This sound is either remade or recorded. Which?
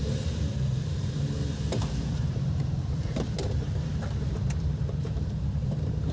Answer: remade